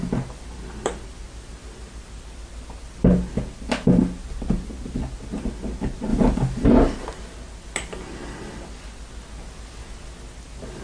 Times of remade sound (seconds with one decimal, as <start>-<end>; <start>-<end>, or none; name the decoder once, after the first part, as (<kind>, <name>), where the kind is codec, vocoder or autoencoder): none